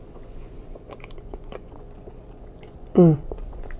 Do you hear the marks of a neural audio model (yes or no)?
yes